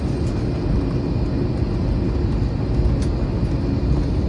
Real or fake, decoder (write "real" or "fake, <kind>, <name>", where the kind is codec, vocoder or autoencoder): real